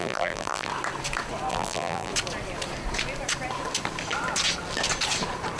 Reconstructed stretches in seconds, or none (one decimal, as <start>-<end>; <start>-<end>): 0.0-0.7; 1.5-2.1